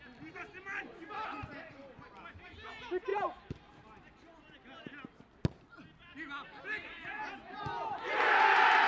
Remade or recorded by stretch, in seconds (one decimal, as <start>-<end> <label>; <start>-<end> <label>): 0.0-8.9 recorded